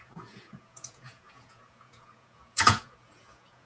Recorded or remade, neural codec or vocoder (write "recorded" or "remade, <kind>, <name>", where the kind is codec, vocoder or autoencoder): remade, vocoder, Vocos